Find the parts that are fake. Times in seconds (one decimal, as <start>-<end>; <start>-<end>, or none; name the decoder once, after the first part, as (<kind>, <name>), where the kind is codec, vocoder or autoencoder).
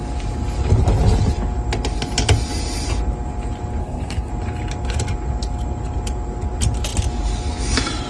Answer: 3.8-4.3 (codec, SNAC)